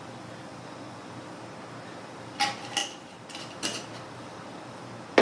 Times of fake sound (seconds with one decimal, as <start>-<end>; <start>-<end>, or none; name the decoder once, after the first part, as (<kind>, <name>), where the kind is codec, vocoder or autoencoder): 0.5-1.1 (vocoder, Vocos)

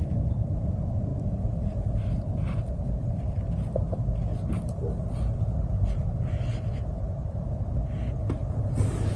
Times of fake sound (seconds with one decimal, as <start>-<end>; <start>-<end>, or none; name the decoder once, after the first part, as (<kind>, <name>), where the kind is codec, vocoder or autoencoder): none

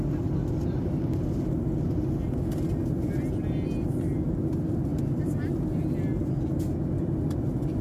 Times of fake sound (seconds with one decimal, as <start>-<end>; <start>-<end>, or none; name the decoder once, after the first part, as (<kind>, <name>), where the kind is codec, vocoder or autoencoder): none

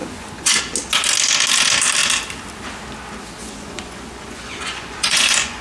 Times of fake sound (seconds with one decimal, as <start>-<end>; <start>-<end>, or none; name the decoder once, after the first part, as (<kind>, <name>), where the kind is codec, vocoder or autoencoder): 0.0-0.6 (vocoder, Vocos); 3.4-5.6

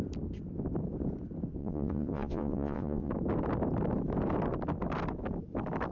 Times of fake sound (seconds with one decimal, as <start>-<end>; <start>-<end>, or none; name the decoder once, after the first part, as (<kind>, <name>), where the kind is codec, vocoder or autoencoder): 1.6-3.1 (vocoder, Vocos)